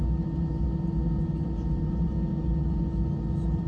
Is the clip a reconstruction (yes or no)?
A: no